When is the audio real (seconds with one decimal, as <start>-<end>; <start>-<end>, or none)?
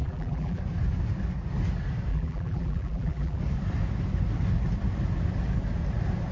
0.6-2.1; 3.4-6.3